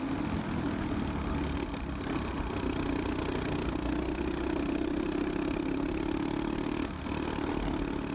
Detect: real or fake real